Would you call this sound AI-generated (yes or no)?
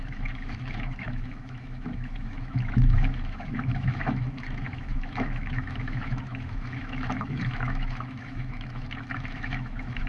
yes